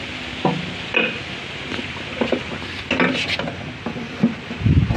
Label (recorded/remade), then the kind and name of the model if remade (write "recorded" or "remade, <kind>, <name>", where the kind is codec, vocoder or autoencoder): recorded